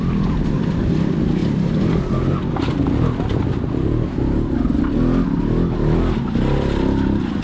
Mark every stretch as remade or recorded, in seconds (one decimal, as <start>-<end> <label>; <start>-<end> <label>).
0.0-7.4 recorded